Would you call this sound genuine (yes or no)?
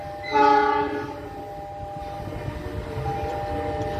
yes